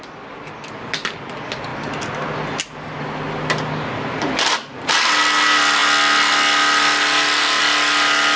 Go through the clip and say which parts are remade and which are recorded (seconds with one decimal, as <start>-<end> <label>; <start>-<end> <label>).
0.0-8.4 recorded